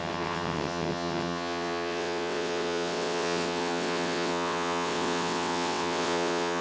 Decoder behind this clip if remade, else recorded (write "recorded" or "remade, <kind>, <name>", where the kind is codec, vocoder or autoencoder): remade, vocoder, WaveNeXt